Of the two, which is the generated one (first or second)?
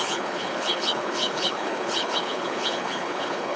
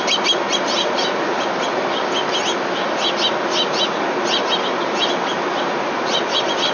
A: first